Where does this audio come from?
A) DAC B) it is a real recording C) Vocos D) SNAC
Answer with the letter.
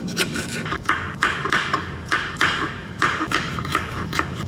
A